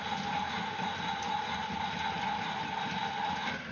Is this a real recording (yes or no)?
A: yes